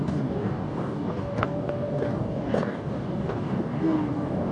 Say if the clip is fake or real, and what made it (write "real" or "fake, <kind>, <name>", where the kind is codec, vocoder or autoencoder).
fake, codec, DAC